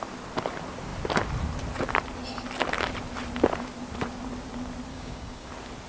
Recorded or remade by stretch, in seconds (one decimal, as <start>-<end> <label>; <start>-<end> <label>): 0.0-4.9 recorded; 4.9-5.5 remade; 5.5-5.9 recorded